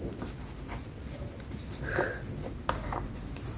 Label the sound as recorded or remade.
recorded